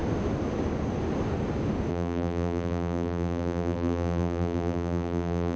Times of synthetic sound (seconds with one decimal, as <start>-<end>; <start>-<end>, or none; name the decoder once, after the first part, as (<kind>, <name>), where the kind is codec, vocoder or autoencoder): 1.9-5.6 (vocoder, BigVGAN v2)